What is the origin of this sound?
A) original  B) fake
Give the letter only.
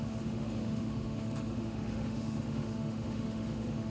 B